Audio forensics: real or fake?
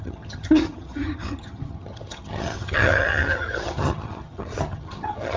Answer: fake